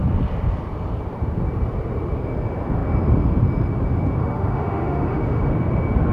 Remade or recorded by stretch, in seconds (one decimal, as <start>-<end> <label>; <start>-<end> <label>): 0.0-4.2 recorded; 4.2-5.5 remade; 5.5-6.1 recorded

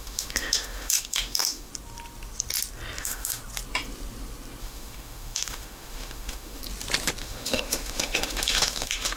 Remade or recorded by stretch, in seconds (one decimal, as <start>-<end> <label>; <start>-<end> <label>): 0.0-1.7 remade; 1.7-3.0 recorded; 3.0-3.4 remade; 3.4-4.6 recorded; 4.6-6.6 remade; 6.6-7.2 recorded; 7.2-9.2 remade

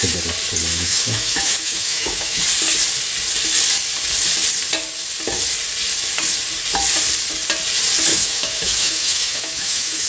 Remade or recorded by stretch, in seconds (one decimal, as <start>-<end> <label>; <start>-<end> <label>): 0.0-0.7 recorded; 0.7-2.4 remade; 2.4-8.1 recorded; 8.1-10.1 remade

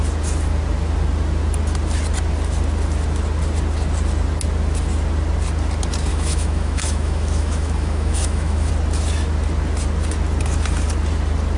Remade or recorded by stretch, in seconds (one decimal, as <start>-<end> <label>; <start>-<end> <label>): 0.0-6.1 recorded; 6.1-8.7 remade; 8.7-11.6 recorded